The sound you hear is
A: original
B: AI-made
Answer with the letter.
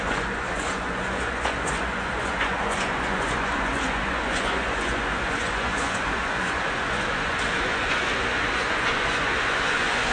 B